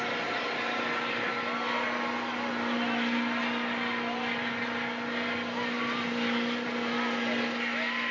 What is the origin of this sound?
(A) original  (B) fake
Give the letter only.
A